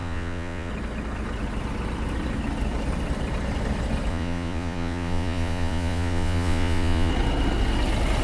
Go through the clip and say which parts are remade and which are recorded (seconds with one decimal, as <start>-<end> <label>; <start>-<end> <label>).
0.0-0.7 remade; 0.7-4.1 recorded; 4.1-7.1 remade; 7.1-8.2 recorded